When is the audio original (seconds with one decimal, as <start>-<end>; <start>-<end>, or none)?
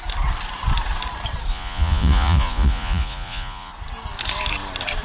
0.0-1.5; 3.7-5.0